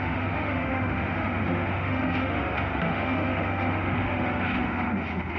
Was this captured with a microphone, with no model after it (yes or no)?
no